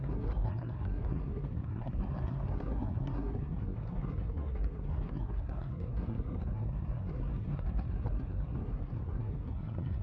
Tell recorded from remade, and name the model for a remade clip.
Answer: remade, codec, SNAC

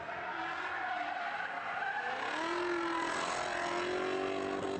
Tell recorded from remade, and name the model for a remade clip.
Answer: recorded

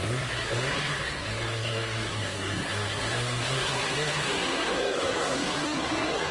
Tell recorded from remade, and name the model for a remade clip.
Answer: remade, codec, SNAC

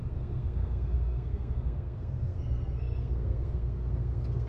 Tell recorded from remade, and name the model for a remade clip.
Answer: remade, codec, SNAC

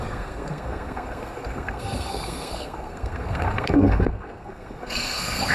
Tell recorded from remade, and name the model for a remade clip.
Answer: remade, codec, SNAC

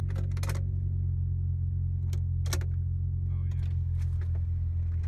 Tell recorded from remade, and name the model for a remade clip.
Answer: recorded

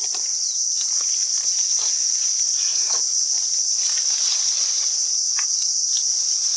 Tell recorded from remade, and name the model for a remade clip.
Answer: recorded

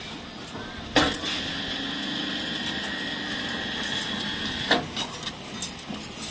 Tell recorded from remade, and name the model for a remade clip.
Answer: recorded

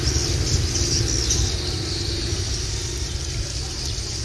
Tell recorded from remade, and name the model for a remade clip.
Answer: recorded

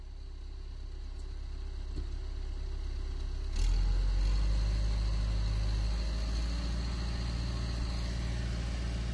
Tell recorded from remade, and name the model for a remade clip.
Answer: recorded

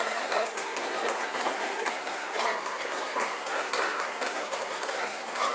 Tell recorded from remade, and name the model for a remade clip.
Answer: remade, codec, SNAC